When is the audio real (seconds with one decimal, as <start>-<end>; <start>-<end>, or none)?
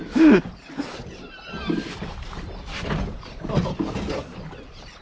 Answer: 0.0-5.0